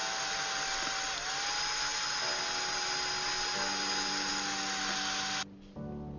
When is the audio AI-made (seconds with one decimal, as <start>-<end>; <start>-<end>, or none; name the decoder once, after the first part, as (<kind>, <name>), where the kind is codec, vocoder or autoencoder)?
none